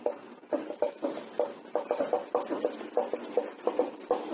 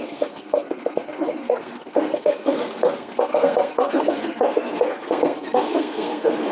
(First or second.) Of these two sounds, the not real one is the second